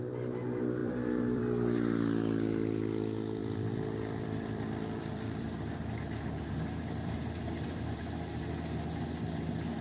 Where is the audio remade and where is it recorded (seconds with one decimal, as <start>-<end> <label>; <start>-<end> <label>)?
0.0-0.8 recorded; 0.8-1.4 remade; 1.4-3.4 recorded; 3.4-8.1 remade; 8.1-9.8 recorded